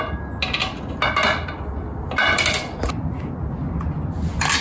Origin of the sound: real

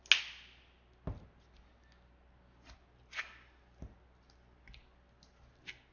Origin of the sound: real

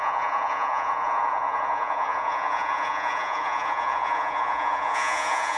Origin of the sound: fake